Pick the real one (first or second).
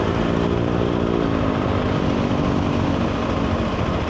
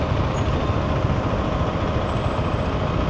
second